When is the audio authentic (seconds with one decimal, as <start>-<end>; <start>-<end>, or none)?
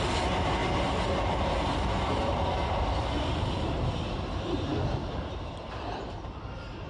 0.0-6.9